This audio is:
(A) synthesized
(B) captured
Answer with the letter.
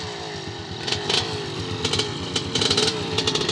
B